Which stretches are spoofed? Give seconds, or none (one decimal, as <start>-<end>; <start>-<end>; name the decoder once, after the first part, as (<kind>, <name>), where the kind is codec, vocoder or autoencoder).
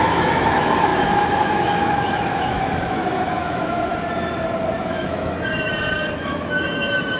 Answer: 0.0-3.9 (autoencoder, DAC-VAE); 4.8-5.7; 6.3-7.2